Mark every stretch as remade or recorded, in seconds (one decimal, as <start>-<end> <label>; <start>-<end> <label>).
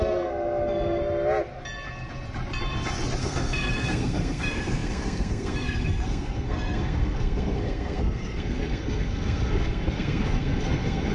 0.0-1.0 remade; 1.0-3.2 recorded; 3.2-11.1 remade